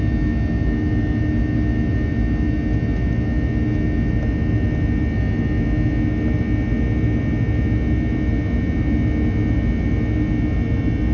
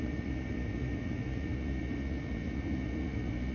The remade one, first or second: second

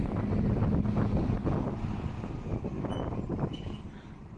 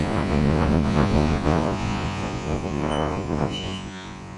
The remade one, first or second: second